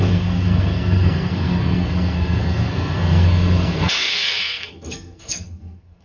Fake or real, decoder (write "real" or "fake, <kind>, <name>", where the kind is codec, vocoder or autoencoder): fake, codec, SNAC